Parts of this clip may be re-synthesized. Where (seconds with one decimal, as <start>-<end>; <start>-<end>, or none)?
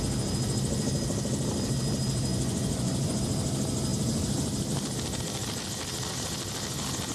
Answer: 2.3-3.2